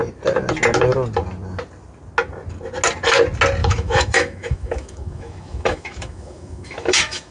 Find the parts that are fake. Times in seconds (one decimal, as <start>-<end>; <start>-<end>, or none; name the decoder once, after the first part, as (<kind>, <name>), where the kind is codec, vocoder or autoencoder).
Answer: 3.6-7.3 (autoencoder, DAC-VAE)